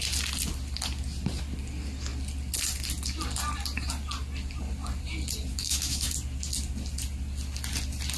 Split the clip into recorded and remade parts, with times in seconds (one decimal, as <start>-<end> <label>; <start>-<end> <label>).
0.0-5.5 recorded; 5.5-6.1 remade; 6.1-8.2 recorded